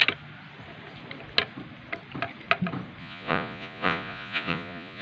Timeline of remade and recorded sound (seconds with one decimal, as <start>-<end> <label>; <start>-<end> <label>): 0.0-3.0 recorded; 3.0-5.0 remade